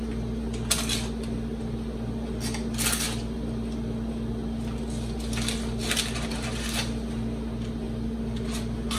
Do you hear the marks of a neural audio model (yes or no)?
no